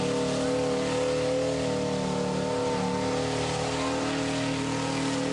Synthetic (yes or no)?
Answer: no